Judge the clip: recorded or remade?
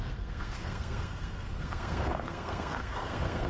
remade